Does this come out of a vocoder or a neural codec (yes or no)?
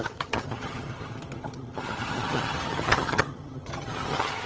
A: yes